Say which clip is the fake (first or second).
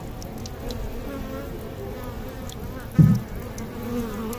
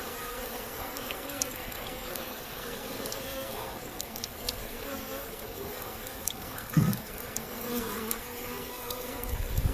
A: second